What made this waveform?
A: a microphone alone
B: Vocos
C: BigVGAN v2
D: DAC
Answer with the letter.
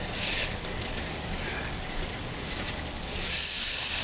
D